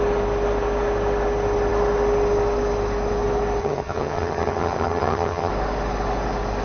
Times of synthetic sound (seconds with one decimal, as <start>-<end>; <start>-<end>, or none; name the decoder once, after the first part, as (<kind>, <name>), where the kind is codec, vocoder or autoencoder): 3.6-5.5 (vocoder, HiFi-GAN)